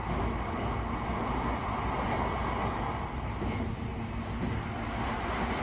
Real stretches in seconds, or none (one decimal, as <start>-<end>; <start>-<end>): 0.0-5.6